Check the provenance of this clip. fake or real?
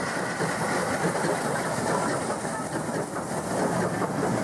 real